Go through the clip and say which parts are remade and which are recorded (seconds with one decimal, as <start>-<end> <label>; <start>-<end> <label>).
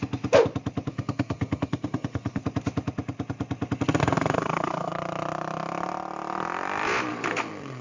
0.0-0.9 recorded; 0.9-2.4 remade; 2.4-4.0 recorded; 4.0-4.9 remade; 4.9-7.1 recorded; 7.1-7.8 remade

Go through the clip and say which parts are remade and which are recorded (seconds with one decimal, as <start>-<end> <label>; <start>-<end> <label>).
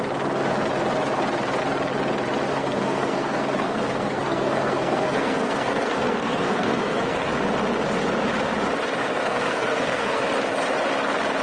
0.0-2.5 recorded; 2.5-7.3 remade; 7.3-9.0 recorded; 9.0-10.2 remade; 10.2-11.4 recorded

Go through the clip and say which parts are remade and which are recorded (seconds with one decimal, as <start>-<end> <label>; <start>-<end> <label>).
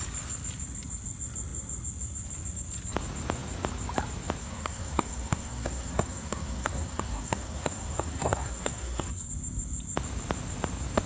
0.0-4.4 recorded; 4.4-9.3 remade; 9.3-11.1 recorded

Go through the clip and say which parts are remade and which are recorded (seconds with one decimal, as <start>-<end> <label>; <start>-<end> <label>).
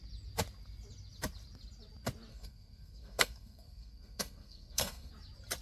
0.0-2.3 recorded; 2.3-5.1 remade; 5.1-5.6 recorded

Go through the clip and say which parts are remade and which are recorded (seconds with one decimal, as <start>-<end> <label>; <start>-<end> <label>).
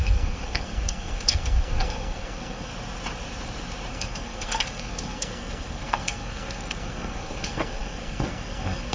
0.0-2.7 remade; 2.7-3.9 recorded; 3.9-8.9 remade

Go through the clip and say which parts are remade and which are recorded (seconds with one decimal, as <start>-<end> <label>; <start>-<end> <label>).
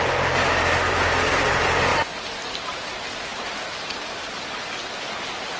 0.0-5.6 recorded